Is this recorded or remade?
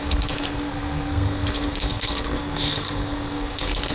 remade